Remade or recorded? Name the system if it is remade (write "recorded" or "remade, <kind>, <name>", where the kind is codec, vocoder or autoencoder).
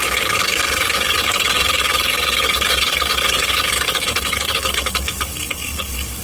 remade, codec, DAC